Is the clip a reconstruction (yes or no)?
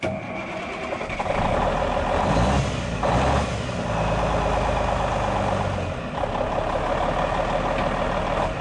no